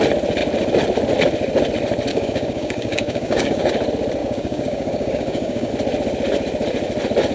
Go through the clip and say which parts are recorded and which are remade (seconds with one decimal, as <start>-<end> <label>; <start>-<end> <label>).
0.0-2.1 recorded; 2.1-3.7 remade; 3.7-4.2 recorded; 4.2-5.7 remade; 5.7-7.3 recorded